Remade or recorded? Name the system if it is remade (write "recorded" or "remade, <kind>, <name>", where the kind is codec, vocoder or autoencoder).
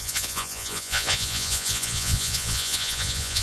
remade, vocoder, Vocos